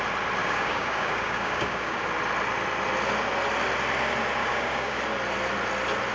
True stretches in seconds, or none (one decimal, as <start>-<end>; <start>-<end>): 0.0-0.4; 2.0-4.4; 5.0-6.1